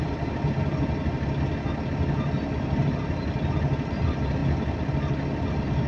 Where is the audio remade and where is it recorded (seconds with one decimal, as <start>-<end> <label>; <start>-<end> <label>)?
0.0-0.6 remade; 0.6-2.6 recorded; 2.6-4.4 remade; 4.4-5.5 recorded; 5.5-5.9 remade